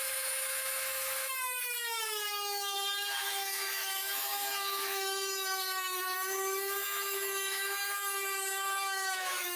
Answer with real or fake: fake